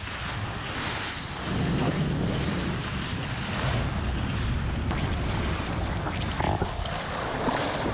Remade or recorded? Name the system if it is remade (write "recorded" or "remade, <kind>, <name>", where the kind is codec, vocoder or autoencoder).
recorded